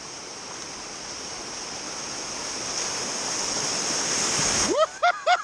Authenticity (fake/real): real